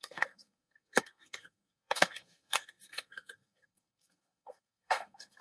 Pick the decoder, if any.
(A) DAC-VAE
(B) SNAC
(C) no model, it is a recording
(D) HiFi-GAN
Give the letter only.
B